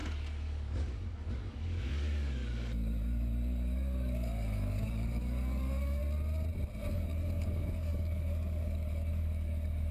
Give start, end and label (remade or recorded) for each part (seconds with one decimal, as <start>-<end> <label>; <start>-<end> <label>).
0.0-6.0 remade; 6.0-6.9 recorded; 6.9-9.9 remade

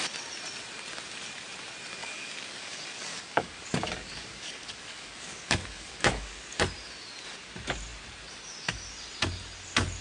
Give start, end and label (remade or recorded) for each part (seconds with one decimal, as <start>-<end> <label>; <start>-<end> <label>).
0.0-2.0 recorded; 2.0-6.6 remade; 6.6-10.0 recorded

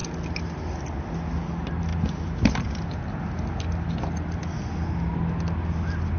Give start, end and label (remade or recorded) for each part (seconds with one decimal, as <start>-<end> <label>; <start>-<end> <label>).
0.0-6.2 recorded

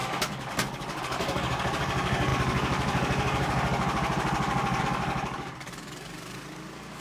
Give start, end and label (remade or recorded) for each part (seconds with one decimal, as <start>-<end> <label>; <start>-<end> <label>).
0.0-7.0 remade

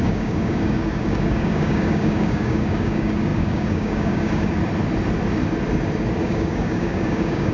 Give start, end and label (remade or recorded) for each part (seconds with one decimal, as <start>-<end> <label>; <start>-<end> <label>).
0.0-4.6 remade; 4.6-6.2 recorded; 6.2-7.5 remade